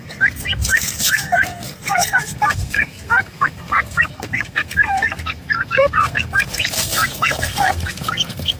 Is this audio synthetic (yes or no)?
yes